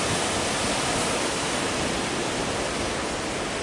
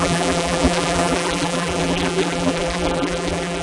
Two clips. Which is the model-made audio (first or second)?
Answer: second